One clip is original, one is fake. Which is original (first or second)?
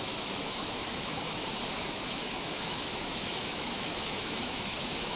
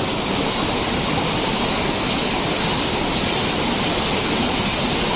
second